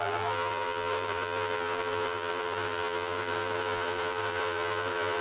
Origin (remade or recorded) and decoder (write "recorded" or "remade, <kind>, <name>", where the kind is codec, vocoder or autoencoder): remade, vocoder, BigVGAN v2